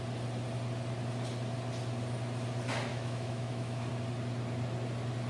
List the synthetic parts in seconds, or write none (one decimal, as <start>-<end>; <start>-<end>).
2.9-3.9